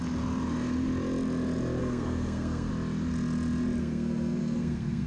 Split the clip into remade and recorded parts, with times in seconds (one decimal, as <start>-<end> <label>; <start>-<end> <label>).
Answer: 0.0-1.8 recorded; 1.8-2.7 remade; 2.7-3.8 recorded; 3.8-5.1 remade